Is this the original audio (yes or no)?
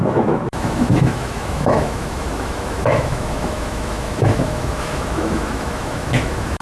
no